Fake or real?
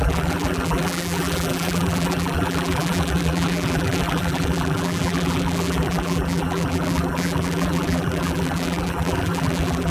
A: fake